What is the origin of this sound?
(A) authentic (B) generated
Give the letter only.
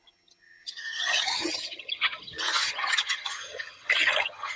B